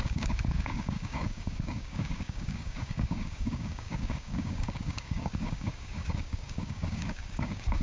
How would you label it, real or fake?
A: fake